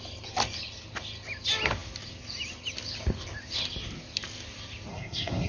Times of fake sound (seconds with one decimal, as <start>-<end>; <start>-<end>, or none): 4.9-5.5